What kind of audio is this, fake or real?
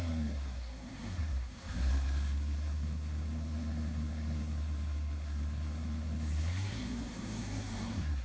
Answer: fake